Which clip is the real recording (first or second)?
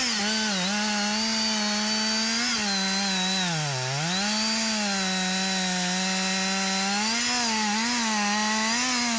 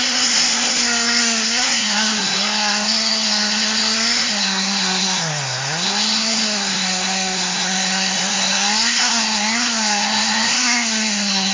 first